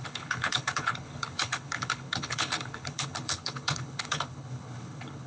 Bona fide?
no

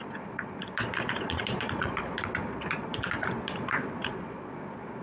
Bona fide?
no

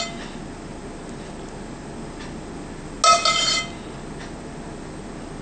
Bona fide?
yes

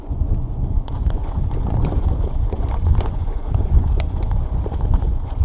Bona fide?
no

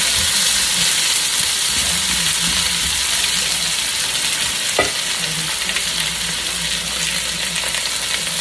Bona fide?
yes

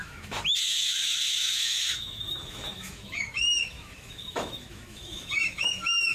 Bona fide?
no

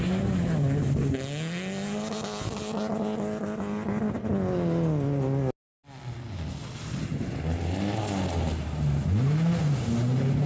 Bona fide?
yes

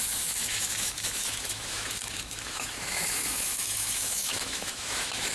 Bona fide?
no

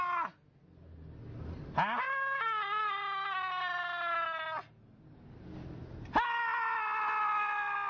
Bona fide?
yes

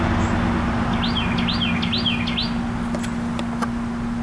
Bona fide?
yes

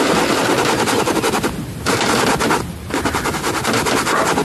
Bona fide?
yes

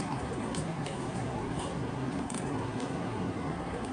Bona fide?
no